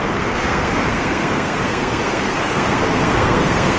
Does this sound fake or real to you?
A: fake